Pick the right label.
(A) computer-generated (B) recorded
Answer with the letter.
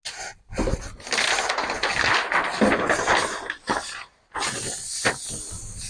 B